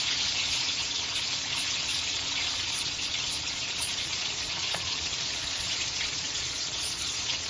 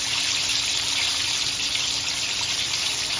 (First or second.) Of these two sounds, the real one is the second